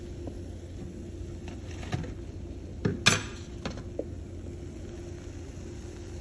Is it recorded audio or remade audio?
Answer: recorded